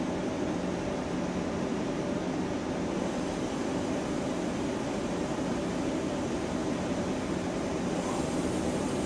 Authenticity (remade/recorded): recorded